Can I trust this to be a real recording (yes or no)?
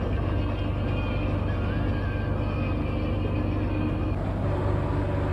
yes